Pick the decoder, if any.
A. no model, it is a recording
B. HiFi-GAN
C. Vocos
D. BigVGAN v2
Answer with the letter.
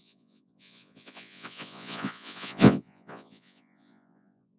C